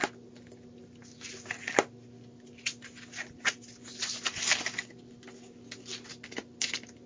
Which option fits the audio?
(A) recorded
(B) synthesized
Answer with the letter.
A